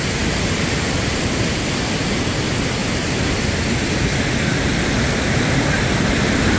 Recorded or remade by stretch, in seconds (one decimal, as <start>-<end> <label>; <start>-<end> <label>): 0.0-2.8 recorded; 2.8-3.5 remade; 3.5-6.6 recorded